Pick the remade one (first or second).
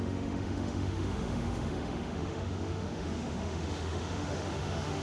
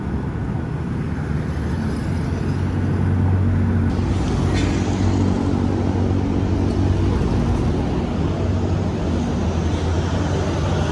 first